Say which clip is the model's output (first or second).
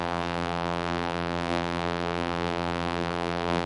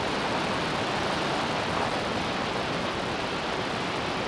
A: first